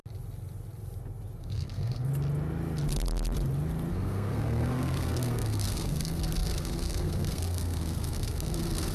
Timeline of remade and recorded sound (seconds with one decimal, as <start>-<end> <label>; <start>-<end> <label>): 0.0-1.4 recorded; 1.4-2.1 remade; 2.1-3.9 recorded; 3.9-8.9 remade